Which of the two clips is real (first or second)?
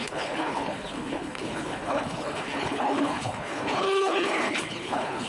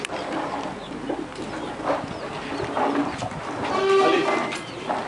second